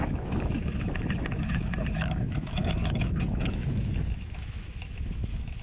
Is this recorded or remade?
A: remade